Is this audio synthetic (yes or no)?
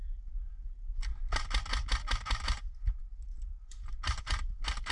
no